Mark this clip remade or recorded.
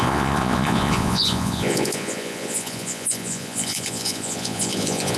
remade